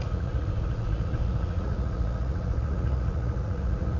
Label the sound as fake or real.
fake